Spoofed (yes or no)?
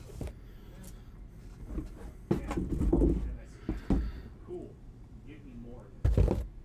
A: no